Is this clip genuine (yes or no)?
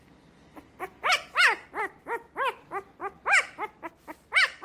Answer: yes